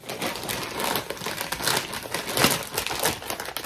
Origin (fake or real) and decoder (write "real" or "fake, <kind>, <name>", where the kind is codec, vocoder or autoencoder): real